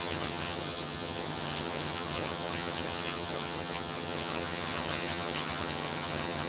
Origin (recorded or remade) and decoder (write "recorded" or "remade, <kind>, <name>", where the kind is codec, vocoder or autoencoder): remade, vocoder, HiFi-GAN